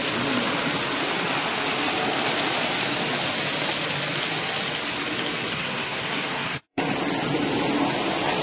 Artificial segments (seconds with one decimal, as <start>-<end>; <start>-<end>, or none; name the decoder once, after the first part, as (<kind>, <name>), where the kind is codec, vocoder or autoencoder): 5.5-6.8 (codec, SNAC)